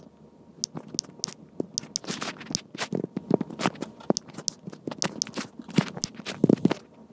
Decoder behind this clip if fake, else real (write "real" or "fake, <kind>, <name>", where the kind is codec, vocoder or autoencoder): real